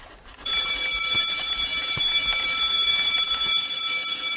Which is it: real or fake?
fake